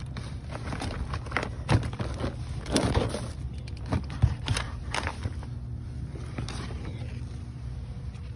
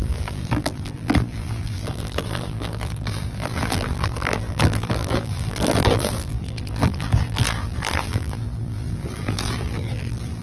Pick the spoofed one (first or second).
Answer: second